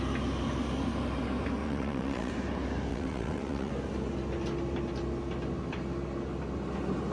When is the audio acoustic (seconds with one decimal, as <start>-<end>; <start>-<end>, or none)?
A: 0.0-1.6; 2.3-2.9; 3.7-7.1